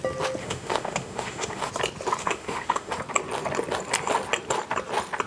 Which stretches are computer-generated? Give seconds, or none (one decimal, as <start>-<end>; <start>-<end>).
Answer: 0.4-1.7; 2.2-2.9

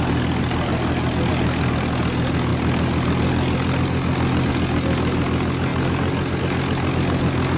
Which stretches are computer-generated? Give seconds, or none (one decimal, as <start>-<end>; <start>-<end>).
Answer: none

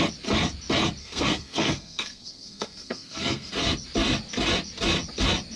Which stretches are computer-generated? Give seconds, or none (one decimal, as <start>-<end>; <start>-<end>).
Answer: 1.0-3.5

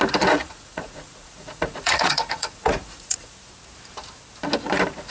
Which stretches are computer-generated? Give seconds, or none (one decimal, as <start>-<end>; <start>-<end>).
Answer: 0.4-3.5